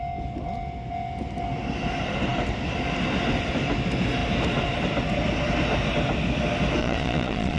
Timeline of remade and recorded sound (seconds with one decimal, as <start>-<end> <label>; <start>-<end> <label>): 0.0-6.8 recorded; 6.8-7.6 remade